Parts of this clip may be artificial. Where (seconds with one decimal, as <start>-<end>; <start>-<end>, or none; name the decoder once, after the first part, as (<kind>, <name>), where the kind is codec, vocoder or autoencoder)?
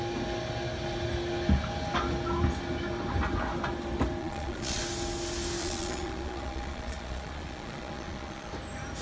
4.2-4.8 (vocoder, Vocos); 5.6-8.5